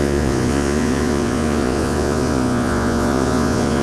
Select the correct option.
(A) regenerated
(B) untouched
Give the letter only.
A